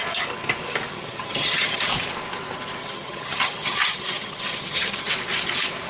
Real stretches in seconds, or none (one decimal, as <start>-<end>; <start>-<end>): 0.0-0.9; 1.9-2.8; 5.1-5.9